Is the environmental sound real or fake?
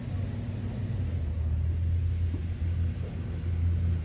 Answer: real